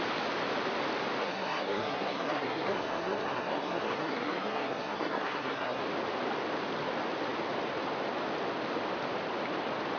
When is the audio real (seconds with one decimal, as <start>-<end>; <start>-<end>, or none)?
0.0-1.2; 5.8-10.0